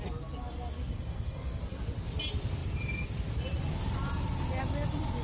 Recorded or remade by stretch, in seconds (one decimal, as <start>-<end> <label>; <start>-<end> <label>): 0.0-0.9 recorded; 0.9-1.6 remade; 1.6-5.2 recorded